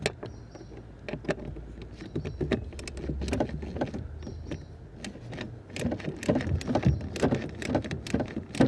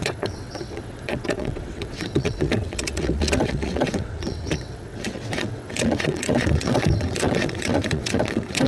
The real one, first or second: first